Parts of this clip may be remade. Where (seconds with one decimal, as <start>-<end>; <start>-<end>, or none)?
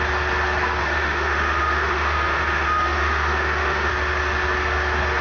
0.8-3.9